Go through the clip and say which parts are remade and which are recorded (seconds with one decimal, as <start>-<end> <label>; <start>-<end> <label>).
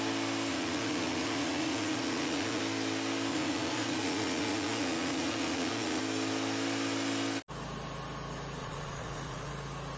0.0-0.5 recorded; 0.5-2.6 remade; 2.6-3.3 recorded; 3.3-6.0 remade; 6.0-8.6 recorded; 8.6-9.5 remade; 9.5-10.0 recorded